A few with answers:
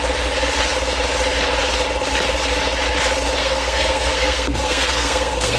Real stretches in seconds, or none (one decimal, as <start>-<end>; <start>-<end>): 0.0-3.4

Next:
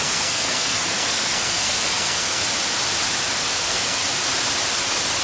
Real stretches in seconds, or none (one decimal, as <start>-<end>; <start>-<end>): 2.4-3.5; 4.0-5.2

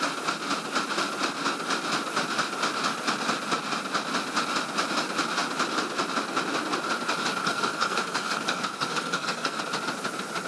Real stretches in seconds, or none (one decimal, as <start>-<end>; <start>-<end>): 0.0-7.4; 9.6-10.5

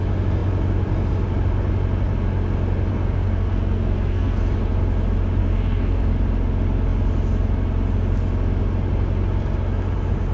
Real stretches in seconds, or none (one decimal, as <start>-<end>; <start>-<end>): 0.0-2.9; 4.4-5.4; 6.1-10.3